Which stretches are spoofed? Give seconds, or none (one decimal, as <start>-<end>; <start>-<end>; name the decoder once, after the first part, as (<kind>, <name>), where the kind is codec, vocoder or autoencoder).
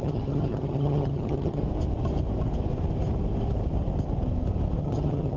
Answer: 0.0-1.6 (vocoder, HiFi-GAN); 4.8-5.4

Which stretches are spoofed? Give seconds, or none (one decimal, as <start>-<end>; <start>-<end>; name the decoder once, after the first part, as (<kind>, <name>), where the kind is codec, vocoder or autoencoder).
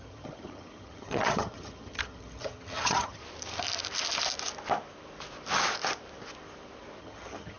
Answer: 0.0-3.2 (vocoder, HiFi-GAN); 7.0-7.6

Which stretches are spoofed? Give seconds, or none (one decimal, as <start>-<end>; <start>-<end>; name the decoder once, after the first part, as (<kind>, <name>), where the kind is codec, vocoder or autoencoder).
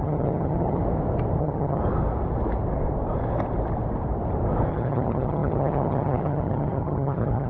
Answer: 0.0-0.8 (vocoder, HiFi-GAN); 1.4-1.8; 4.7-7.5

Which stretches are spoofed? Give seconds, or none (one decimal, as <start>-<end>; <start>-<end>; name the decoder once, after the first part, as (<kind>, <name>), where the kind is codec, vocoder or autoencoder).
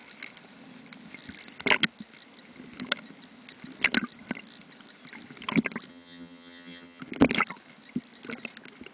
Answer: 5.9-7.0 (vocoder, HiFi-GAN)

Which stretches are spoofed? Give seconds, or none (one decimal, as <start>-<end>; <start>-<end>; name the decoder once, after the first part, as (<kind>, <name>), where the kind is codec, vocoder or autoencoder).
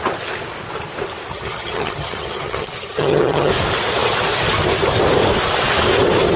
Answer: 1.3-3.5 (vocoder, HiFi-GAN)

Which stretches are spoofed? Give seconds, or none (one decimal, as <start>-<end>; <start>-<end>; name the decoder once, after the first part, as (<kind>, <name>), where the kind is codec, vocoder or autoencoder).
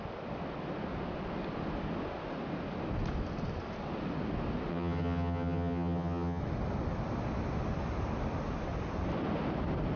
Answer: 4.7-6.4 (vocoder, HiFi-GAN)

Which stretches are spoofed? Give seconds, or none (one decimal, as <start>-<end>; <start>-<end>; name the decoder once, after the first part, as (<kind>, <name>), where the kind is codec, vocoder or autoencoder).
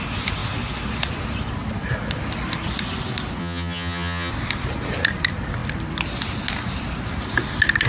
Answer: 3.4-4.3 (vocoder, HiFi-GAN)